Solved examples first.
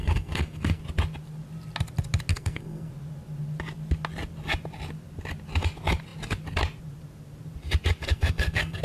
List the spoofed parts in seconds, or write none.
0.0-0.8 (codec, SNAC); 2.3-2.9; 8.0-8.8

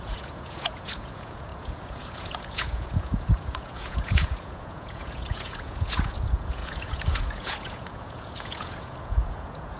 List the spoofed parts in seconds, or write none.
0.0-9.8 (vocoder, Vocos)

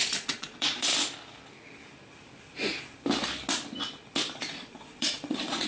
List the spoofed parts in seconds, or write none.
0.0-0.9 (vocoder, Vocos); 4.3-5.7

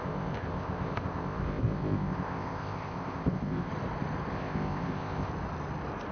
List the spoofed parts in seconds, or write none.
0.0-3.7 (codec, ZipCodec); 4.3-5.3